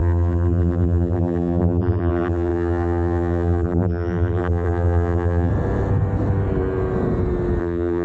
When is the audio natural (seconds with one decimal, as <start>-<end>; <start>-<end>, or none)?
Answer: 5.5-7.6